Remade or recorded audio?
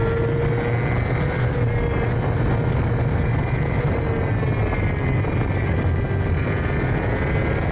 recorded